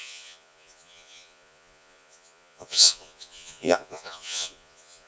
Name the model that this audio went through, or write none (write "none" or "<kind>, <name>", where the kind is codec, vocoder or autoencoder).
vocoder, Vocos